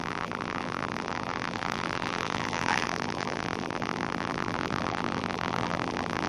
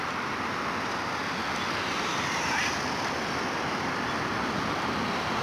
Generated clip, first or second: first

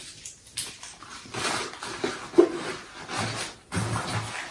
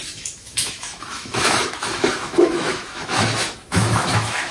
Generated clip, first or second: second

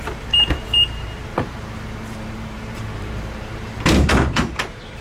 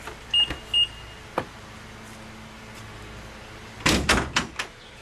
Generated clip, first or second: first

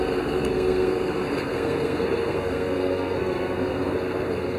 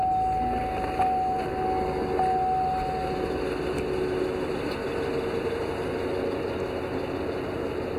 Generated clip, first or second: first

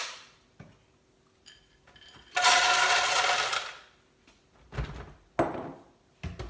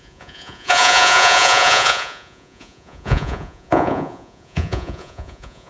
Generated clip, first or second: second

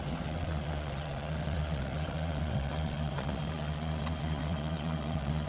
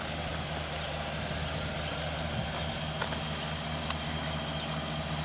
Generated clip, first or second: first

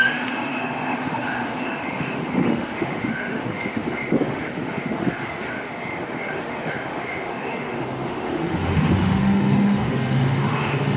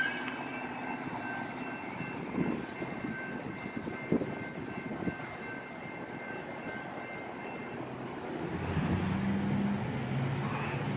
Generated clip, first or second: first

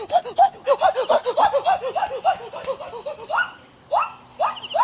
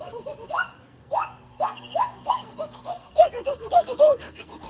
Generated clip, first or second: second